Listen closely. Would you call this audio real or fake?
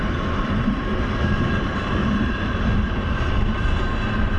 fake